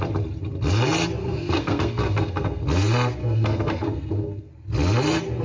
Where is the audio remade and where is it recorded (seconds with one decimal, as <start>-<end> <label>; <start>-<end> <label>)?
0.0-1.2 recorded; 1.2-2.6 remade; 2.6-3.2 recorded; 3.2-4.5 remade; 4.5-5.4 recorded